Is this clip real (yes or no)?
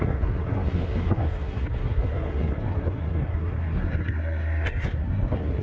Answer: no